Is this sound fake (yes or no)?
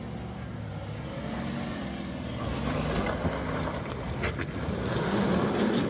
no